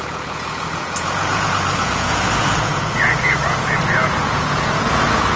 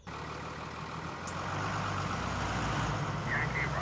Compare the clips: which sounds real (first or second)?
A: second